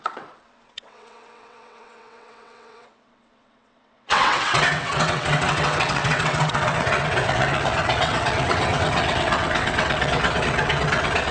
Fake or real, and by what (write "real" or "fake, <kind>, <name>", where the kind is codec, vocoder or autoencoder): fake, vocoder, WaveNeXt